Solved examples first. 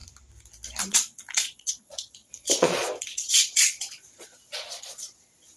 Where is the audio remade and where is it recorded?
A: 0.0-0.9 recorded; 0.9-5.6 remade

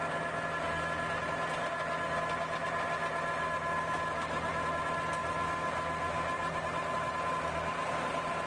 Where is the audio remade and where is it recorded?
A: 0.0-8.5 recorded